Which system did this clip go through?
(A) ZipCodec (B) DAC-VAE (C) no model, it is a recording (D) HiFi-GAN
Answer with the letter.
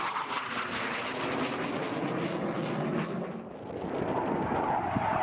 C